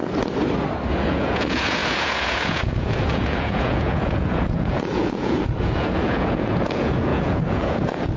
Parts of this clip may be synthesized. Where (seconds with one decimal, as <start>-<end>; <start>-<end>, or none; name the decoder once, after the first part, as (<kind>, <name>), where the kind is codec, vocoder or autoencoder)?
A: 0.9-8.2 (vocoder, Vocos)